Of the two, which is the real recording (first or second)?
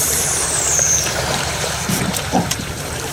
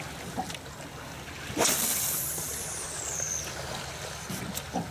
second